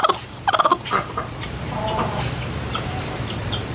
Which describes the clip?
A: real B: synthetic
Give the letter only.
B